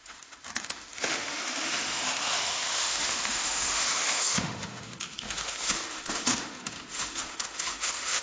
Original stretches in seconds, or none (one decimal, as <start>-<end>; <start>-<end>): none